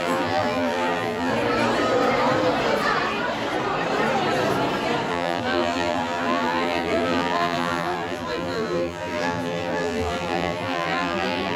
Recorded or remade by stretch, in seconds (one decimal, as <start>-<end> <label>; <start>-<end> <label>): 0.0-1.3 remade; 1.3-5.1 recorded; 5.1-11.6 remade